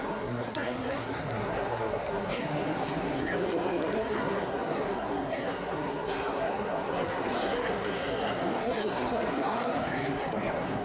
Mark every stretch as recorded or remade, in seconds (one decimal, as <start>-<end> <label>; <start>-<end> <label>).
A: 0.0-10.8 remade